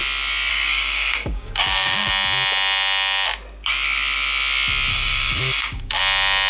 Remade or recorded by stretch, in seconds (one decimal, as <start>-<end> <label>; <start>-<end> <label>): 0.0-0.5 recorded; 0.5-2.1 remade; 2.1-4.9 recorded; 4.9-6.0 remade; 6.0-6.5 recorded